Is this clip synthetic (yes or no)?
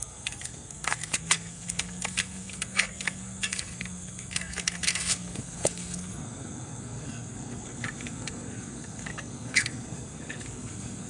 yes